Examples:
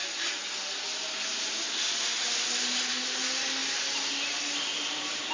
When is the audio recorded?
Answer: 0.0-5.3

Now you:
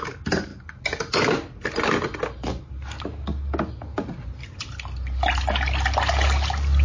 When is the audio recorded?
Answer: 0.0-6.8

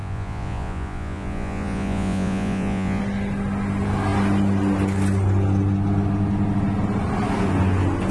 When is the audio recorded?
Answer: 3.0-8.1

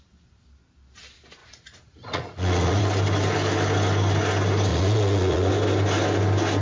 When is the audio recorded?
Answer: 0.0-1.4; 2.8-4.7; 5.5-6.6

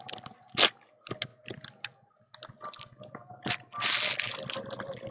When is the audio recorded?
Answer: 0.0-5.1

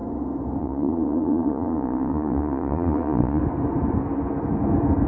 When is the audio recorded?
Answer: 0.0-0.6; 3.4-5.1